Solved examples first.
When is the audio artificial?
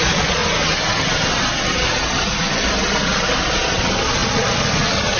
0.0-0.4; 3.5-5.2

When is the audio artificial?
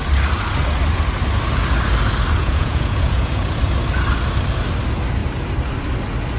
2.4-3.6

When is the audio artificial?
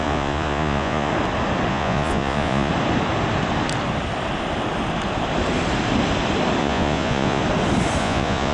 0.0-1.1; 1.7-2.7; 6.6-7.4; 8.0-8.5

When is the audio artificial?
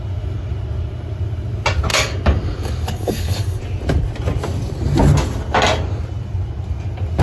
1.9-3.6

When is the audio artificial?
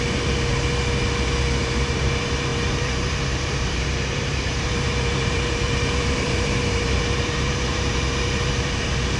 0.0-0.5; 1.6-9.2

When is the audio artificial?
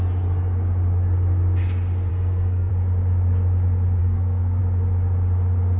2.1-2.7; 4.0-4.6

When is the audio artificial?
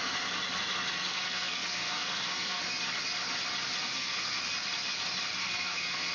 1.0-2.6; 3.8-4.4; 5.4-6.1